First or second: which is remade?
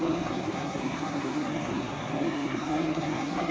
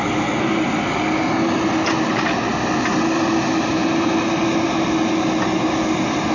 first